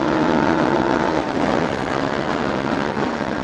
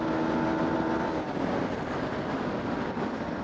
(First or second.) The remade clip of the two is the first